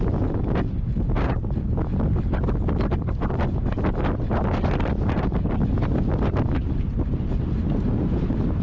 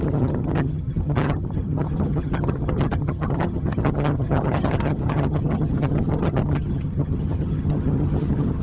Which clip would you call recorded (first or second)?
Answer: first